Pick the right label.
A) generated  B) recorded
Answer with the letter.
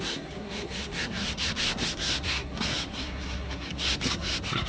A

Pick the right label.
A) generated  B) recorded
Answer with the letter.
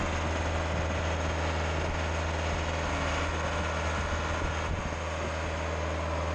B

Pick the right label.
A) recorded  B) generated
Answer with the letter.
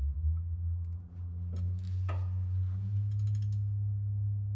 A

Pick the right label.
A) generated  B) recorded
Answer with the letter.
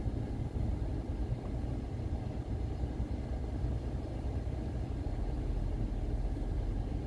B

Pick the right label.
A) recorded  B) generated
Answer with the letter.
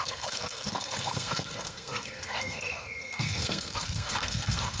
B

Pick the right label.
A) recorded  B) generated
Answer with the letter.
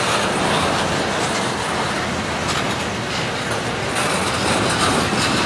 A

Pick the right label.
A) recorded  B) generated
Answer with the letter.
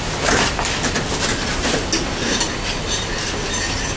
A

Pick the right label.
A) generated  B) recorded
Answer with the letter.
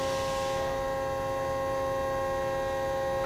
B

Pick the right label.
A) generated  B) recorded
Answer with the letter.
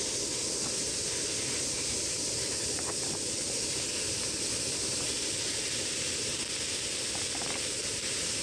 B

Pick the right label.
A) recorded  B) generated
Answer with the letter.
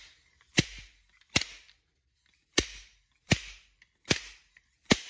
A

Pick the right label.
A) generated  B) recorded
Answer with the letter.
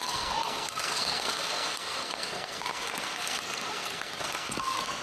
A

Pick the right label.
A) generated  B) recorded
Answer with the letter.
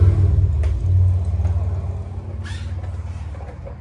B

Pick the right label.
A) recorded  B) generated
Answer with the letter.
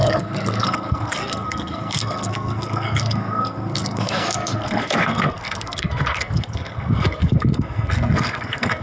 B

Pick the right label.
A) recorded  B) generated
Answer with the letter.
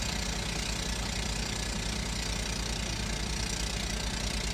A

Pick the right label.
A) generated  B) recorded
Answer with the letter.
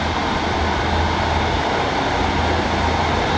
B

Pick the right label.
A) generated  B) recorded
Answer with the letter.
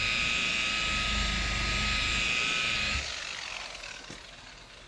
B